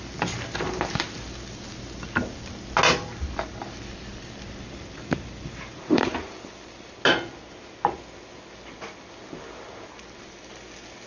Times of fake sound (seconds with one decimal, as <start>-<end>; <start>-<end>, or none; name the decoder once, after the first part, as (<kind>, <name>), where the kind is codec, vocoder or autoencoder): 3.6-6.9 (vocoder, BigVGAN v2)